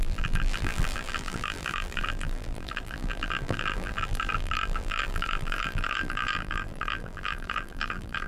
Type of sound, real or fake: fake